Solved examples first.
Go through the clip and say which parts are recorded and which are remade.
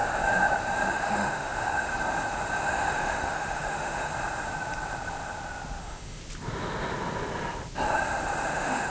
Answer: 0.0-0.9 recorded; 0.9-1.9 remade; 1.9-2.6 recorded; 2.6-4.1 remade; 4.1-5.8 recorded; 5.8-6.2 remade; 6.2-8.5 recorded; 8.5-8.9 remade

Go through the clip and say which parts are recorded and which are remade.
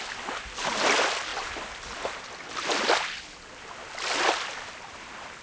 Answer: 0.0-5.4 recorded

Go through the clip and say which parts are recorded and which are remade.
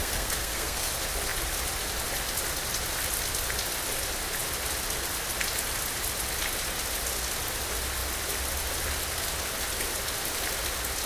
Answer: 0.0-0.9 remade; 0.9-11.1 recorded